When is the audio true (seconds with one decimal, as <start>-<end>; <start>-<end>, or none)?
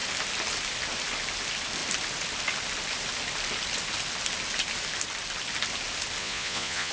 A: 0.0-6.2